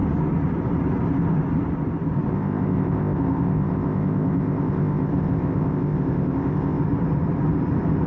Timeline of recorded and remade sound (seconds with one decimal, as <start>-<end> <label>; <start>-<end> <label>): 0.0-2.3 recorded; 2.3-6.8 remade; 6.8-8.1 recorded

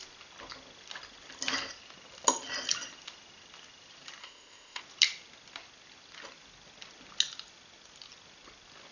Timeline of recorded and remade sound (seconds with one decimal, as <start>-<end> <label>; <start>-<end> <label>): 0.0-4.2 recorded; 4.2-4.8 remade; 4.8-8.9 recorded

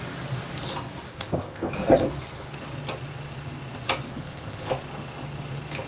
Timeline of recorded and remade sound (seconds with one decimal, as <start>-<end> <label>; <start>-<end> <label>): 0.0-1.1 recorded; 1.1-1.7 remade; 1.7-4.2 recorded; 4.2-4.7 remade; 4.7-5.9 recorded

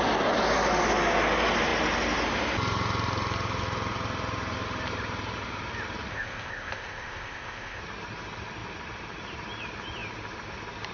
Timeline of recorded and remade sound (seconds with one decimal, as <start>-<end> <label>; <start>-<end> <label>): 0.0-6.1 recorded; 6.1-7.8 remade; 7.8-10.9 recorded

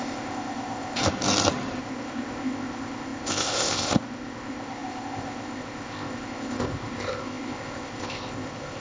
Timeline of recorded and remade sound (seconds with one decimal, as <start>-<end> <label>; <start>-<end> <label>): 0.0-1.0 remade; 1.0-1.8 recorded; 1.8-8.8 remade